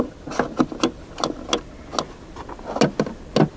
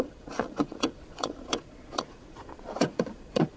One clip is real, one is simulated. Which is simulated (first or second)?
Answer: second